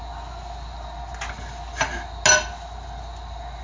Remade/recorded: recorded